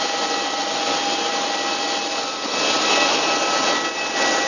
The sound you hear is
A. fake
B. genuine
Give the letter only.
B